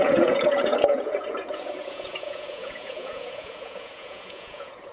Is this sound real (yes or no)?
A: no